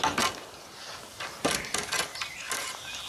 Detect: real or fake real